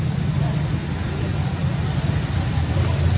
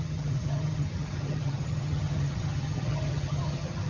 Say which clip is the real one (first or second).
first